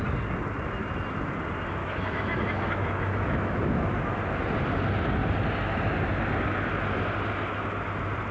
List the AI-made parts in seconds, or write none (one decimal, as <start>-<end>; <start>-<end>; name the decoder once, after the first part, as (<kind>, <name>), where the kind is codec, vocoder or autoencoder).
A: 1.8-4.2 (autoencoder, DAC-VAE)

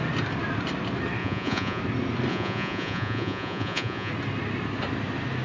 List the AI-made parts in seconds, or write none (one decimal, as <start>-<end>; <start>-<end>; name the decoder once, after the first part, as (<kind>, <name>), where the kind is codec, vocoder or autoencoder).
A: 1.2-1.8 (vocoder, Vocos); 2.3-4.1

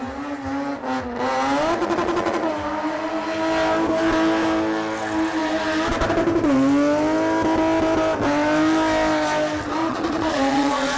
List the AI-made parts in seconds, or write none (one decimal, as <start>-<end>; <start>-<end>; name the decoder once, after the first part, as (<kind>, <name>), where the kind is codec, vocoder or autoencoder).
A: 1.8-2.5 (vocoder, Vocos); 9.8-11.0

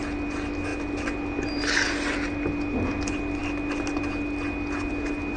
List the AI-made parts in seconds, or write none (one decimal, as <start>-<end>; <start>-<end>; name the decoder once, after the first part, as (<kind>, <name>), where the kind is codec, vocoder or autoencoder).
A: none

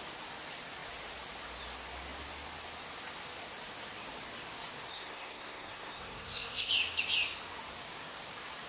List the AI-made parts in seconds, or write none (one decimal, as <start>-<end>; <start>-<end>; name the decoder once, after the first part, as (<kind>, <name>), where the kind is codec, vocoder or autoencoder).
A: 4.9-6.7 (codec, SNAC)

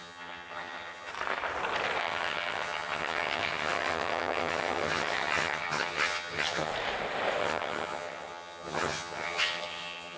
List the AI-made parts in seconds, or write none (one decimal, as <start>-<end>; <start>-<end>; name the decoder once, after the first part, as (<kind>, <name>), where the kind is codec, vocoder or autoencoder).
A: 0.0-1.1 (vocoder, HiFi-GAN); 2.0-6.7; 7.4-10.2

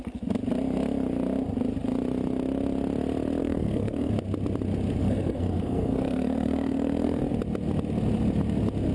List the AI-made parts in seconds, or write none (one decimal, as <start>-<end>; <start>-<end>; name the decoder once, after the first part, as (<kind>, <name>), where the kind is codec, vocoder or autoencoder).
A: 3.4-4.1 (codec, SNAC); 5.0-7.2

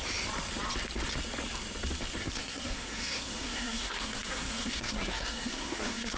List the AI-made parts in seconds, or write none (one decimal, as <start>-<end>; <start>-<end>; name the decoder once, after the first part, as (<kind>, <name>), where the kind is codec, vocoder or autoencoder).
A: 2.2-6.2 (codec, SNAC)